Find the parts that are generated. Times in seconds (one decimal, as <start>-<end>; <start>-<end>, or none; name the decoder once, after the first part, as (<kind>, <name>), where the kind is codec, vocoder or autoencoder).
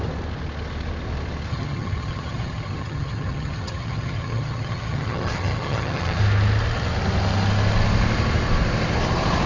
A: 1.5-6.2 (vocoder, HiFi-GAN)